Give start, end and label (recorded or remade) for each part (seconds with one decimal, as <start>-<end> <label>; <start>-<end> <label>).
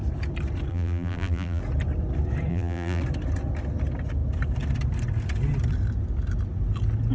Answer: 0.0-0.7 recorded; 0.7-1.6 remade; 1.6-2.5 recorded; 2.5-3.0 remade; 3.0-7.1 recorded